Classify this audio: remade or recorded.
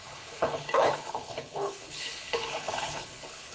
remade